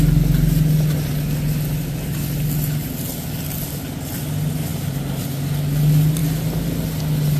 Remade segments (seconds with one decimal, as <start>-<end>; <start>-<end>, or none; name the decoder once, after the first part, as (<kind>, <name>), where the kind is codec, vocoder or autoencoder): none